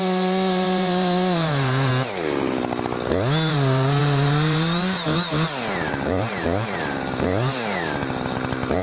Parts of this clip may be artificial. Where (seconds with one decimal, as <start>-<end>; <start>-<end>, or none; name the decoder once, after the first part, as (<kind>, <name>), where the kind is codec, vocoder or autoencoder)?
0.0-1.9 (vocoder, BigVGAN v2); 3.5-8.8